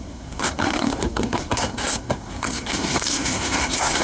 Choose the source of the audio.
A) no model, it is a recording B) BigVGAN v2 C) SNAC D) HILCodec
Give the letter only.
C